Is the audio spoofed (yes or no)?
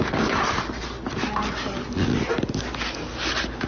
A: no